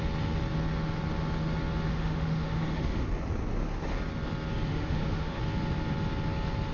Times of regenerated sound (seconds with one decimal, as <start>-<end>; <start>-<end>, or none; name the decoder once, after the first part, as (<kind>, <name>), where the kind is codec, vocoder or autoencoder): 1.9-3.1 (autoencoder, DAC-VAE); 4.7-5.4